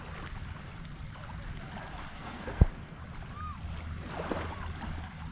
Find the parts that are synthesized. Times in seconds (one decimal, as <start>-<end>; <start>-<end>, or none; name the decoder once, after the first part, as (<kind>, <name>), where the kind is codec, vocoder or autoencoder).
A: 2.1-3.0 (codec, SNAC)